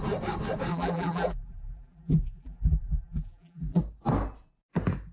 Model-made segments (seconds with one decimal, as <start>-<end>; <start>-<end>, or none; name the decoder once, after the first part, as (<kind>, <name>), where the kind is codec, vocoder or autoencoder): 0.7-3.8 (vocoder, BigVGAN v2)